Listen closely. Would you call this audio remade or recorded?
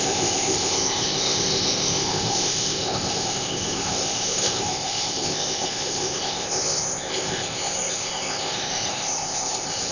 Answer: remade